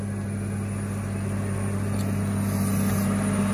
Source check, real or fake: real